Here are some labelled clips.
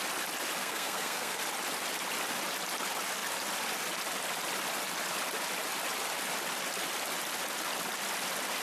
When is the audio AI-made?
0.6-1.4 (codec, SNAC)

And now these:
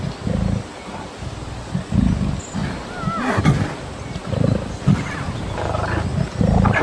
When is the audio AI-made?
none

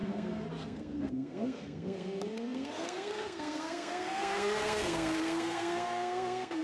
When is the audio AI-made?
0.0-6.6 (codec, SNAC)